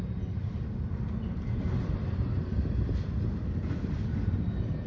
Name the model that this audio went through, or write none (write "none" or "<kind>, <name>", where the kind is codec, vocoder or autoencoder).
none